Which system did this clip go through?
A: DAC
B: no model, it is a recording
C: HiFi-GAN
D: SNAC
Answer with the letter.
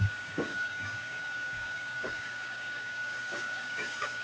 A